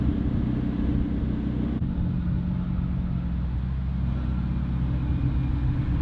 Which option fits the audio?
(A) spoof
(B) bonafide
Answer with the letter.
B